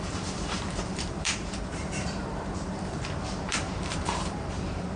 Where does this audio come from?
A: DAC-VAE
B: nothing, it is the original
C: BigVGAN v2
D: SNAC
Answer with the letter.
C